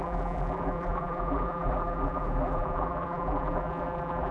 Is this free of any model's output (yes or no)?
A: no